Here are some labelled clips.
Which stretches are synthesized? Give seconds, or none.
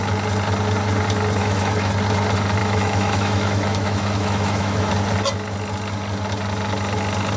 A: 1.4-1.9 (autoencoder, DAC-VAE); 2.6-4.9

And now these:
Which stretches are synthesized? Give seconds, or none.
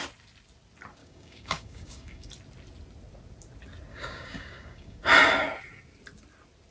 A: 1.0-2.3 (codec, DAC); 3.9-5.0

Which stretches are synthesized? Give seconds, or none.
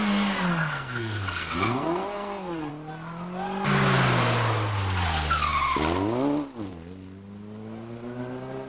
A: 0.5-2.7 (codec, SNAC)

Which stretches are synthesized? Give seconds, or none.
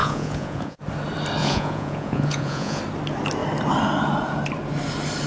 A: 0.0-0.8 (vocoder, Vocos); 1.4-2.8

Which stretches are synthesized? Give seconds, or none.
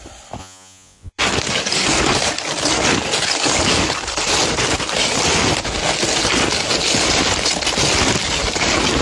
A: 0.4-1.2 (vocoder, Vocos)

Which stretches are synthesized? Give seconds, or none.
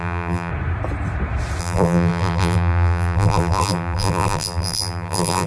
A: 0.0-0.5 (vocoder, BigVGAN v2); 1.6-5.5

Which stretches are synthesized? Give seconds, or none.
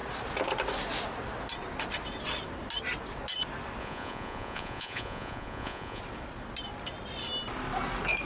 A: 3.8-6.0 (vocoder, Vocos)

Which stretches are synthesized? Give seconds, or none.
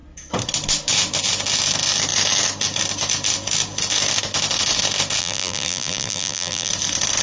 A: 5.2-6.7 (vocoder, BigVGAN v2)